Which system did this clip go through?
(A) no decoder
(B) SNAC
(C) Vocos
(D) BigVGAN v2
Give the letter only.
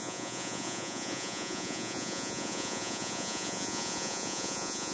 C